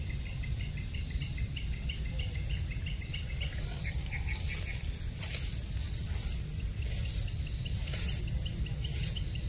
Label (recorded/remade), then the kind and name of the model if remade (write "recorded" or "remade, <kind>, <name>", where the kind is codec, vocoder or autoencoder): recorded